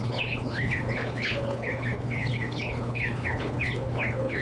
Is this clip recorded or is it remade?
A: remade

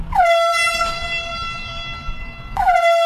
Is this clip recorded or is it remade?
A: recorded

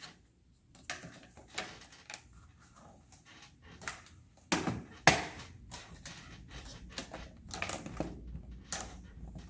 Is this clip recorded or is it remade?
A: recorded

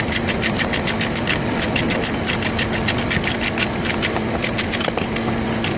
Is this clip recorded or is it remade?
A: recorded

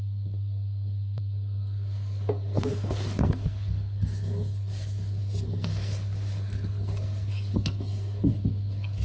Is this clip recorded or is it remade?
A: remade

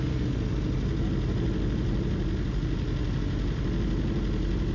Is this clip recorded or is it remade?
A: recorded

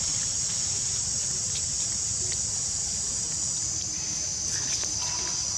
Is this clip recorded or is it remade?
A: recorded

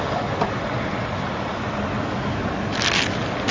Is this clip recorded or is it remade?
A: recorded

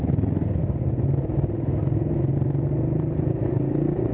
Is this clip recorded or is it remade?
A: recorded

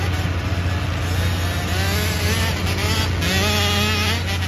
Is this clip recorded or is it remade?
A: recorded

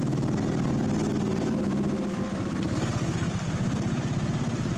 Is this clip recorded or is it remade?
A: recorded